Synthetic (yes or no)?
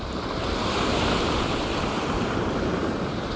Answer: no